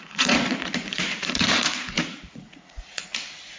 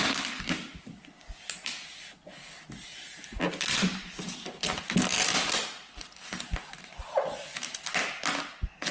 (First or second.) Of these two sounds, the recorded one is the second